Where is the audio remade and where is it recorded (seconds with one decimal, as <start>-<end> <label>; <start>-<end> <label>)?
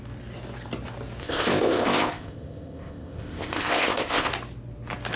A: 0.0-1.2 recorded; 1.2-4.3 remade; 4.3-5.2 recorded